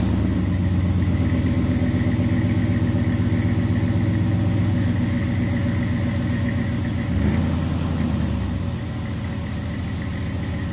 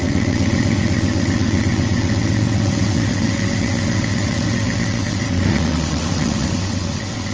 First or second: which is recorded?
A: first